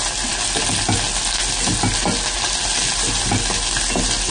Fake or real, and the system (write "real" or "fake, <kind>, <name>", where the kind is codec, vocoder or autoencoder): real